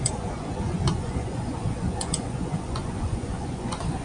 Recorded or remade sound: remade